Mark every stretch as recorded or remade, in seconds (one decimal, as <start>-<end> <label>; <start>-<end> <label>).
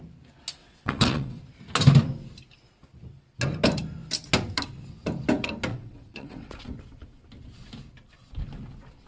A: 0.0-0.6 recorded; 0.6-1.4 remade; 1.4-5.7 recorded; 5.7-6.5 remade; 6.5-9.1 recorded